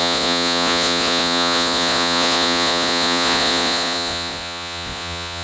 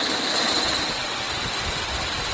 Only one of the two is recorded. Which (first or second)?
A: second